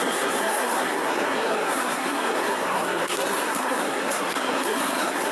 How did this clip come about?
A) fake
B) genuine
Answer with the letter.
A